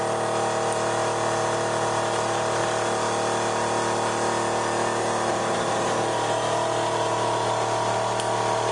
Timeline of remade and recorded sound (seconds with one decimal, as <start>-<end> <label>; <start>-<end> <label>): 0.0-8.7 recorded